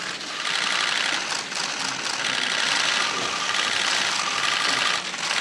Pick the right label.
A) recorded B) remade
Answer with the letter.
A